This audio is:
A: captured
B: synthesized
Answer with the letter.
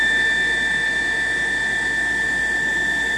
A